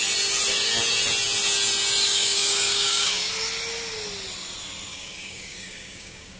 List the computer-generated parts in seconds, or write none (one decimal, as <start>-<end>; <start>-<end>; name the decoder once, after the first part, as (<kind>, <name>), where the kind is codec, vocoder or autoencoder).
2.0-3.3 (codec, DAC); 4.9-6.4